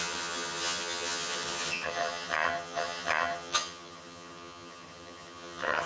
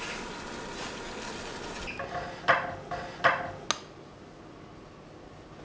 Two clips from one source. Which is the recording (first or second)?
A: second